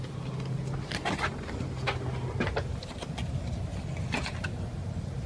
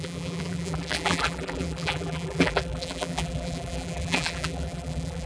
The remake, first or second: second